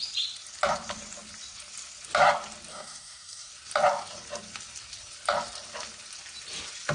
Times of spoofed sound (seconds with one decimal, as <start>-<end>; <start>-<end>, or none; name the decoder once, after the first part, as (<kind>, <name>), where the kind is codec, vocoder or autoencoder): 2.7-3.5 (codec, SNAC)